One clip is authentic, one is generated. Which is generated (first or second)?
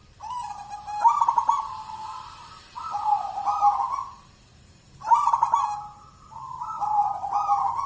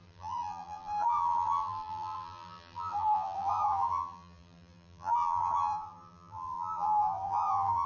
second